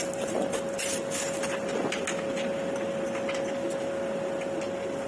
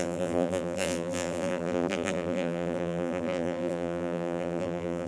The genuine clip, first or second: first